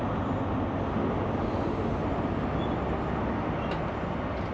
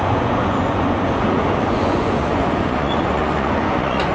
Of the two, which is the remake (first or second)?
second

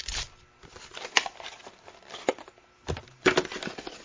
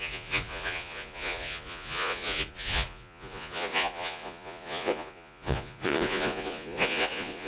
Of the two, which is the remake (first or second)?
second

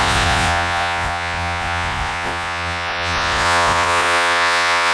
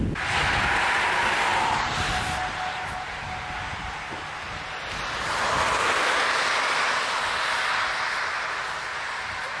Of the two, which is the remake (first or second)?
first